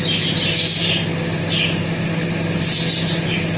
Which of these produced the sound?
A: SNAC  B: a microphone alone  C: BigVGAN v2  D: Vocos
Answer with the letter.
B